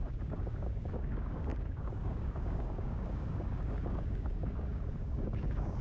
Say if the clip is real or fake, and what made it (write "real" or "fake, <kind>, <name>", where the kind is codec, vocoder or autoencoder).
fake, codec, DAC